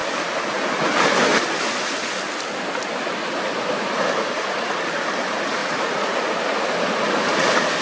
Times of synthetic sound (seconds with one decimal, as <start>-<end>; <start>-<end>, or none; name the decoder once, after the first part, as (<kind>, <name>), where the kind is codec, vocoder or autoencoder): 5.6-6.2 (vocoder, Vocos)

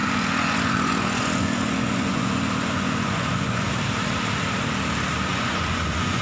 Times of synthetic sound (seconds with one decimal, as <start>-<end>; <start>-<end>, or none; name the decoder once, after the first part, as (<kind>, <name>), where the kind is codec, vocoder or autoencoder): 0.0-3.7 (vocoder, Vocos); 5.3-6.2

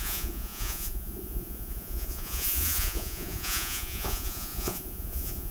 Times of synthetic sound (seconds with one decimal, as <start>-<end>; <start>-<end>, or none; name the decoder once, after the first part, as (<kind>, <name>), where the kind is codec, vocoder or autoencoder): 0.0-5.5 (vocoder, Vocos)

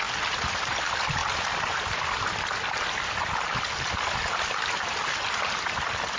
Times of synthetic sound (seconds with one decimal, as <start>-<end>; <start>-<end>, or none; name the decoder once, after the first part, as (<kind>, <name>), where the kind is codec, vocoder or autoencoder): none

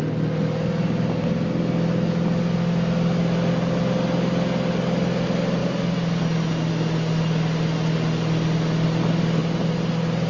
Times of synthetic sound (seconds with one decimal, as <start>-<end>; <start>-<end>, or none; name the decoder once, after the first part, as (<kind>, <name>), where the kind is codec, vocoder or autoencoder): none

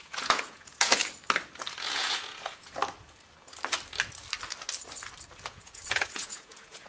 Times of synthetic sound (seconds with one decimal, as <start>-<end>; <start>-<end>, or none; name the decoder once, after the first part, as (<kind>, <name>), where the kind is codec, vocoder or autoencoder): 0.0-1.0 (vocoder, Vocos); 1.8-2.8; 5.4-6.9

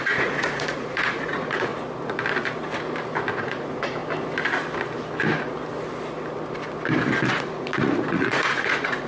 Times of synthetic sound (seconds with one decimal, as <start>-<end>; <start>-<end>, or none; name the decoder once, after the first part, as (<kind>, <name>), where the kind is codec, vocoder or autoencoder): 0.0-1.7 (vocoder, Vocos); 3.3-4.0; 7.3-9.1

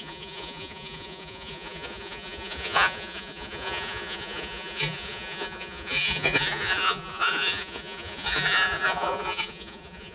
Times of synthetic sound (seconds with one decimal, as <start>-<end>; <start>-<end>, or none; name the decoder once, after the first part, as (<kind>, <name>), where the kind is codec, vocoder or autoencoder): 0.0-10.1 (vocoder, Vocos)